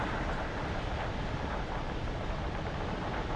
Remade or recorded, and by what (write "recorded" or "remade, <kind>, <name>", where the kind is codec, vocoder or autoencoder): remade, vocoder, BigVGAN v2